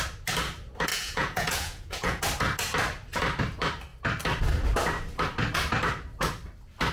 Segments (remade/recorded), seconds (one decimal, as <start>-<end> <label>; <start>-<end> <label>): 0.0-0.9 recorded; 0.9-2.2 remade; 2.2-6.9 recorded